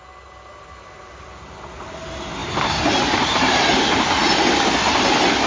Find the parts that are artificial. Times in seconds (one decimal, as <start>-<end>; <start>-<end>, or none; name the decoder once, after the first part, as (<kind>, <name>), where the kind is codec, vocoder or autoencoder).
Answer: none